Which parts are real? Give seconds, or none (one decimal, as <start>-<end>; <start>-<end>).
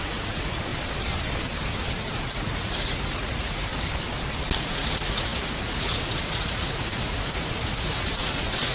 0.7-1.9; 3.7-4.6